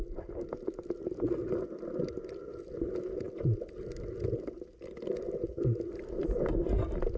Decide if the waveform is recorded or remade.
recorded